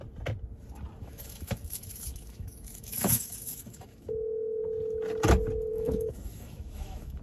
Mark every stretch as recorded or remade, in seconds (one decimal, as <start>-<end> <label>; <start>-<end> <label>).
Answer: 0.0-1.0 recorded; 1.0-4.6 remade; 4.6-5.7 recorded; 5.7-7.2 remade